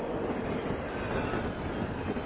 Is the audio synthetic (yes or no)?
no